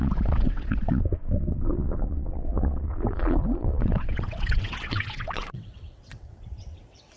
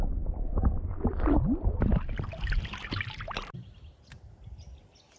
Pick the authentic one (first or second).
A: second